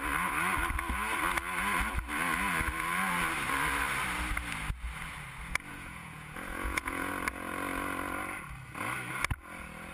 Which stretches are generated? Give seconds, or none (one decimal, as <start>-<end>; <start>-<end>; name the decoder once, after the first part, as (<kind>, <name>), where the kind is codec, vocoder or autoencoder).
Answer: 5.7-7.1 (vocoder, Vocos)